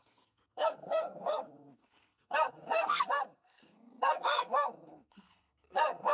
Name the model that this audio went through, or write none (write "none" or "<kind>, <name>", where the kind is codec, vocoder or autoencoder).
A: codec, SNAC